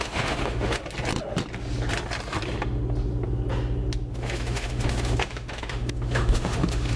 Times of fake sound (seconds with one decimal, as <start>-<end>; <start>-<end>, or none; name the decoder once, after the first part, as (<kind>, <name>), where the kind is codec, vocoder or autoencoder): 0.0-0.8 (autoencoder, DAC-VAE); 4.1-7.0